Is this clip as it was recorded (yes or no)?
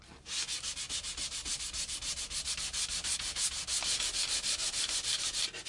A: yes